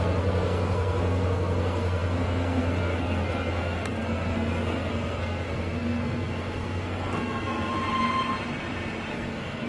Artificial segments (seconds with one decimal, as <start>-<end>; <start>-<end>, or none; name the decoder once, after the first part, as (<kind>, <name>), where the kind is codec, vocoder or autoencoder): 0.0-7.7 (codec, SNAC); 9.1-9.7